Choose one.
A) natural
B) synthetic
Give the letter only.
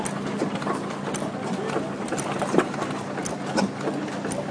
A